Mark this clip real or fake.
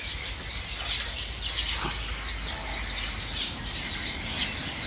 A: real